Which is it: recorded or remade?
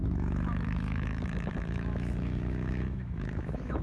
remade